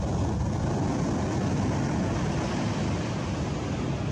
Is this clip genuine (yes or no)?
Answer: yes